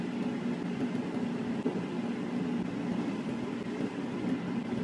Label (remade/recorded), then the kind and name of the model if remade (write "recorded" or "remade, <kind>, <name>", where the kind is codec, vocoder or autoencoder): recorded